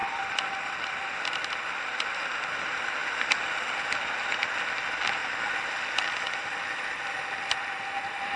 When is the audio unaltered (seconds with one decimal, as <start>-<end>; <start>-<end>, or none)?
2.2-5.2